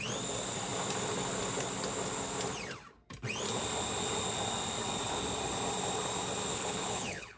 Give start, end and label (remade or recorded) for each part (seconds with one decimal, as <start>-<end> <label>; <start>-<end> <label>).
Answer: 0.0-6.5 recorded; 6.5-7.4 remade